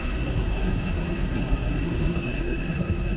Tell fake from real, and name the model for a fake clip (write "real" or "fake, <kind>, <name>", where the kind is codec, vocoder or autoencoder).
fake, codec, SNAC